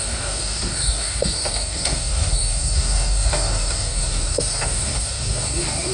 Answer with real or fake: fake